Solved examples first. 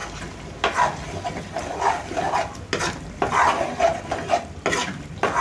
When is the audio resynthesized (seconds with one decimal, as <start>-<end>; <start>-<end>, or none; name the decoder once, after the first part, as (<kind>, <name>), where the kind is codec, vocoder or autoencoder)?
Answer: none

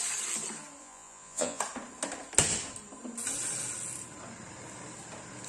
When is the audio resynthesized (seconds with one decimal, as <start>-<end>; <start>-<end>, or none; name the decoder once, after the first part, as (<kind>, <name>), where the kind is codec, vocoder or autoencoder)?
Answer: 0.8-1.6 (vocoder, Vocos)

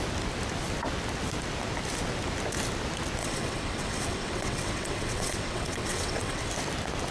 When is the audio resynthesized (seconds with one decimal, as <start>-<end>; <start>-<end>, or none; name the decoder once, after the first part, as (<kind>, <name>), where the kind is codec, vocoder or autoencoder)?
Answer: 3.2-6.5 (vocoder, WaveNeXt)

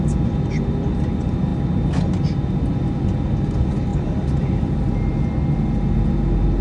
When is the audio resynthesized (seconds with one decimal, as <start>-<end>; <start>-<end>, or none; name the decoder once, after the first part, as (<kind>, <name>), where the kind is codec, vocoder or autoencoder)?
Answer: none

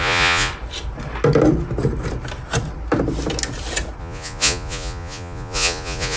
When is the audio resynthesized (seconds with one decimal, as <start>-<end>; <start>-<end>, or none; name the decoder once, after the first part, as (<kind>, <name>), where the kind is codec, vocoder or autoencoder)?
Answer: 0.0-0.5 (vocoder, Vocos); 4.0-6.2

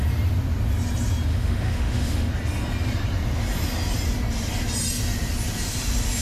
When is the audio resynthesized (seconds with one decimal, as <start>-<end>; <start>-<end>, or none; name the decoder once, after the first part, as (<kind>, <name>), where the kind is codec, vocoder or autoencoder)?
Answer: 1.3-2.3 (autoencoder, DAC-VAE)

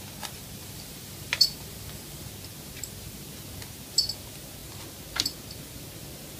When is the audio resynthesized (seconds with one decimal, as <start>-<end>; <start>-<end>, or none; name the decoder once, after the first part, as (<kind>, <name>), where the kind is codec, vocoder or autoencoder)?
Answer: 0.6-2.3 (vocoder, BigVGAN v2)